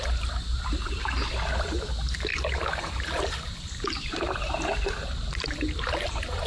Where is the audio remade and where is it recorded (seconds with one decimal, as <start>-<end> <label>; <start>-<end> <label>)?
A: 0.0-2.3 recorded; 2.3-6.5 remade